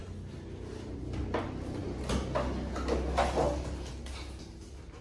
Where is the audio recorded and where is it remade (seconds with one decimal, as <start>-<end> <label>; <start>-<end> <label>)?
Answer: 0.0-5.0 recorded